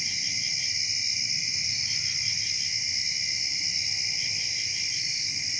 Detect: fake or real real